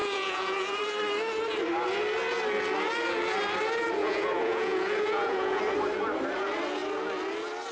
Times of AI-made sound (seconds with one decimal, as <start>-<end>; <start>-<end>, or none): 0.0-0.8; 4.0-5.6